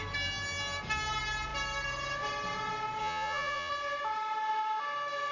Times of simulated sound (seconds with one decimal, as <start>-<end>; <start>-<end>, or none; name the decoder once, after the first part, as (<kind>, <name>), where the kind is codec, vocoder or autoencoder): 3.0-3.7 (vocoder, Vocos)